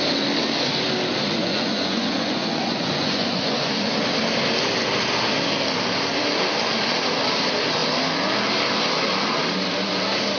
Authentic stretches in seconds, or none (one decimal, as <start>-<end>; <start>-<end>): 0.0-1.4; 3.9-10.4